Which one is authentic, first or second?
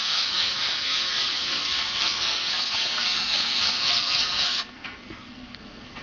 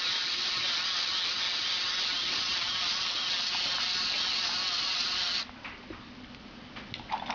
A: second